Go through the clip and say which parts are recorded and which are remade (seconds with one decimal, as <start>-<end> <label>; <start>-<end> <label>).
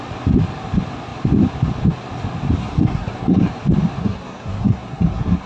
0.0-2.6 recorded; 2.6-3.5 remade; 3.5-4.0 recorded; 4.0-5.5 remade